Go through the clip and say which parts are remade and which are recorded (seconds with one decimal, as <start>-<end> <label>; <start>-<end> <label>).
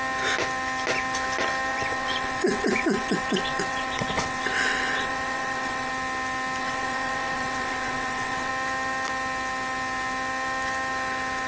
0.0-1.7 recorded; 1.7-5.9 remade; 5.9-6.6 recorded; 6.6-8.5 remade; 8.5-11.5 recorded